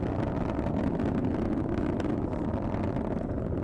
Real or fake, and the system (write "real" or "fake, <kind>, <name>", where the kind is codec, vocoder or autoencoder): real